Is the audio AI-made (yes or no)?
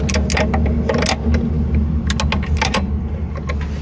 no